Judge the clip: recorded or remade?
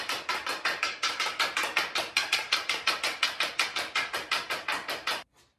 recorded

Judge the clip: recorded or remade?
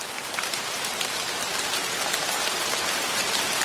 remade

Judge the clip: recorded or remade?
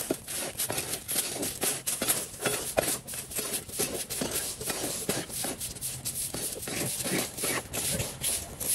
recorded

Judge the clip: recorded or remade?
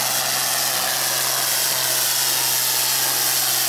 recorded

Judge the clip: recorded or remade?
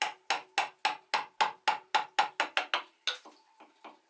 recorded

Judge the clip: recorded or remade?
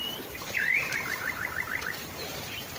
remade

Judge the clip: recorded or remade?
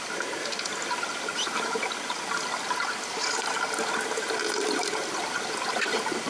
recorded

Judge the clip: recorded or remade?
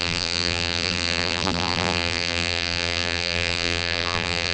remade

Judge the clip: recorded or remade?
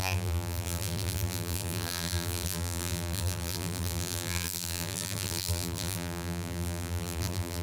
remade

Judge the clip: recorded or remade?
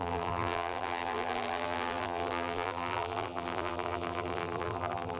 remade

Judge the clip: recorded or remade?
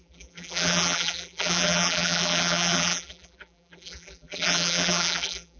remade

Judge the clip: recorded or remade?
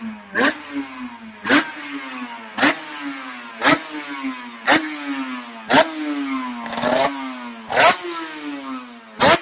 recorded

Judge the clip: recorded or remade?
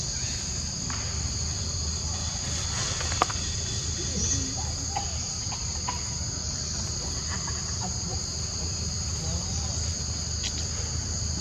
recorded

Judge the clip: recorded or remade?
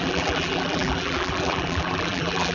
remade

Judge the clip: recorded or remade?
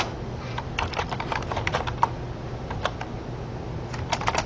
recorded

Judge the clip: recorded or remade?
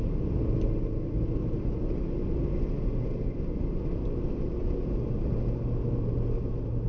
recorded